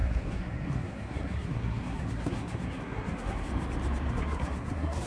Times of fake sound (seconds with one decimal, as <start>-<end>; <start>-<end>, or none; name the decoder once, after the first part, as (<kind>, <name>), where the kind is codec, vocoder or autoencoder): 0.0-3.5 (codec, SNAC); 4.1-5.1